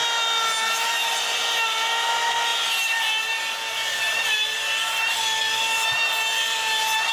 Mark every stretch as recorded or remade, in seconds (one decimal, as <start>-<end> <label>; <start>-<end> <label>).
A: 0.0-7.1 recorded